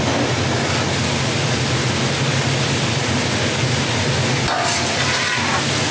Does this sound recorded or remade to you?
recorded